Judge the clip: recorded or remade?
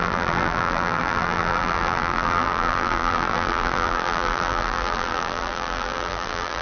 remade